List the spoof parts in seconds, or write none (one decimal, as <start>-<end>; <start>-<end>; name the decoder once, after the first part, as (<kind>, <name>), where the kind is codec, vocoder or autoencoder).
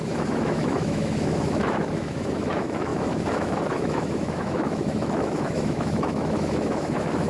0.0-7.3 (autoencoder, DAC-VAE)